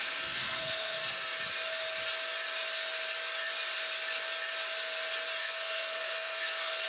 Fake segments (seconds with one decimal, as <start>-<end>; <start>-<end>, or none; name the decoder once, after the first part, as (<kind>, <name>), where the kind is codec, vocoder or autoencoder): 0.0-1.3 (codec, SNAC); 5.4-6.9